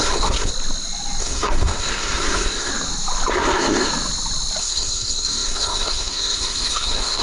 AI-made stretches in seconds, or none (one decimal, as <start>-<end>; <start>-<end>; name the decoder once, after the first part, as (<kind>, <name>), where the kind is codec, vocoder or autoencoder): 0.0-0.5 (codec, SNAC); 1.2-2.7; 3.3-3.9; 4.6-7.2